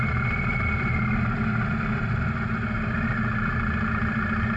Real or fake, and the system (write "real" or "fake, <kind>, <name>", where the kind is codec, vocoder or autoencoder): real